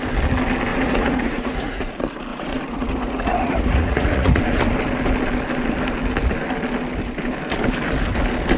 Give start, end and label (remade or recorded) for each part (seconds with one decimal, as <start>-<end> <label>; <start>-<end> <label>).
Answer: 0.0-0.7 recorded; 0.7-1.9 remade; 1.9-2.3 recorded; 2.3-4.4 remade; 4.4-8.6 recorded